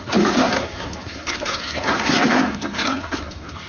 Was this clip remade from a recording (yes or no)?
yes